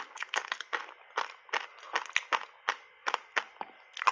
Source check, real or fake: real